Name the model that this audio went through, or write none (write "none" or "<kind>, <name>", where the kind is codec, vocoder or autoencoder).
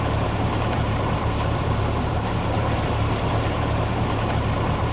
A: vocoder, BigVGAN v2